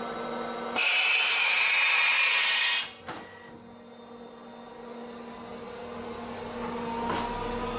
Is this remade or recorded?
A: recorded